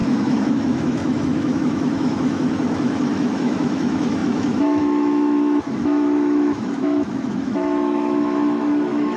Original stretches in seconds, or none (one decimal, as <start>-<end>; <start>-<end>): none